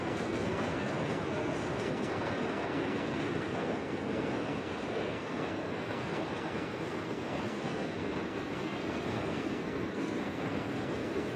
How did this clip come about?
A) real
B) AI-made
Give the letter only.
B